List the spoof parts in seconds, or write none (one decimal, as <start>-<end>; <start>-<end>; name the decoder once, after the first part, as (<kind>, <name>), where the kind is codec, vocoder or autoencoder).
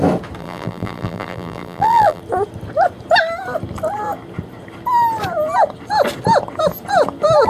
0.4-2.2 (vocoder, BigVGAN v2)